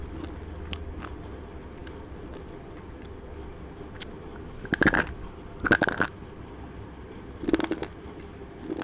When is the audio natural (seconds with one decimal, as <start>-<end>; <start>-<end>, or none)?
0.0-8.8